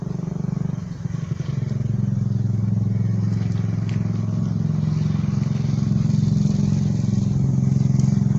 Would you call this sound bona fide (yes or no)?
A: yes